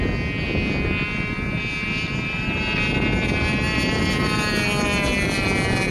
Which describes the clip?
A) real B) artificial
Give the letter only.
A